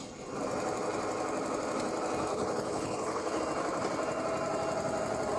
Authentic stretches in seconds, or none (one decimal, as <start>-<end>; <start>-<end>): 0.0-2.3; 3.4-5.4